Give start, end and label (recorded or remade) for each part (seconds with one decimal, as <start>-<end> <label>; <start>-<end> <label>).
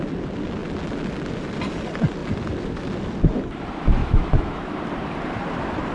0.0-4.0 recorded; 4.0-4.8 remade; 4.8-5.9 recorded